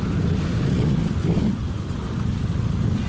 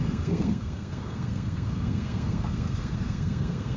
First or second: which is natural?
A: first